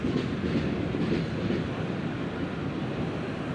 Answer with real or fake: real